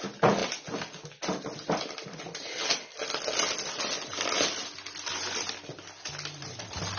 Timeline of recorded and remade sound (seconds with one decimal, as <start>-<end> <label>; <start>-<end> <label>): 0.0-7.0 recorded